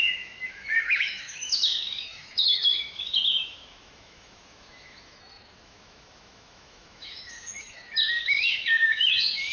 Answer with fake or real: fake